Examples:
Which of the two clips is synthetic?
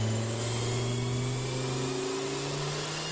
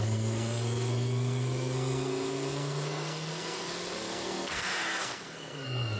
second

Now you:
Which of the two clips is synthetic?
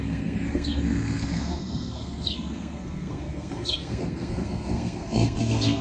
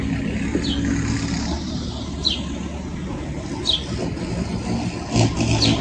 first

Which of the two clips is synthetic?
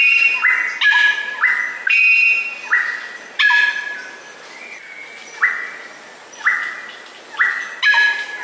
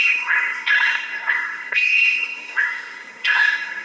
second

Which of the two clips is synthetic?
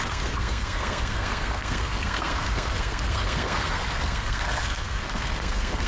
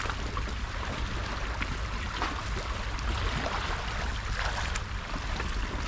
first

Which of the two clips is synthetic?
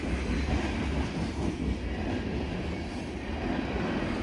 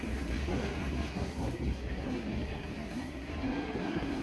second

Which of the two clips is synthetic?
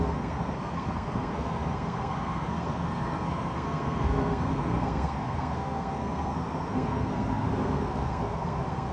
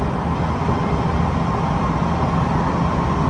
first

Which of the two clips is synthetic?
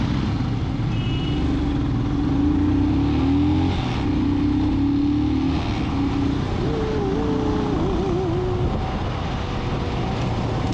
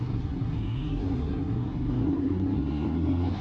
second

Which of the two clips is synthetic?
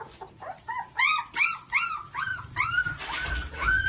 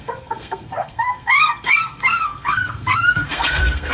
second